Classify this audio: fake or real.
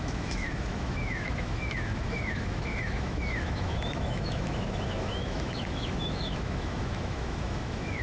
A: fake